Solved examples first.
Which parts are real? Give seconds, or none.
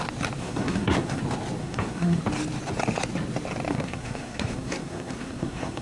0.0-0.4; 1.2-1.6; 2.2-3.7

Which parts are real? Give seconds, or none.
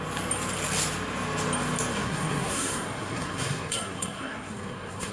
0.0-1.9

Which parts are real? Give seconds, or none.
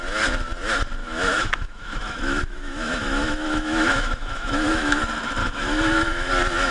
0.0-1.0; 5.0-5.4; 6.3-6.7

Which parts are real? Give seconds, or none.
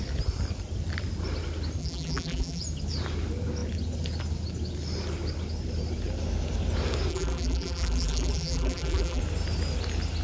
0.0-1.8; 2.6-7.1; 9.2-10.2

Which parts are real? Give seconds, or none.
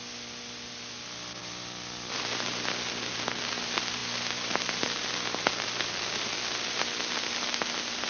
0.0-8.1